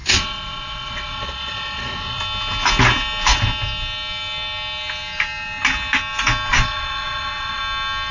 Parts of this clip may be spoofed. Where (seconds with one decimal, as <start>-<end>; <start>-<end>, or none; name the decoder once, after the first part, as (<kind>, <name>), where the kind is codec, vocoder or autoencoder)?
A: 0.0-2.2 (vocoder, Vocos); 6.5-7.6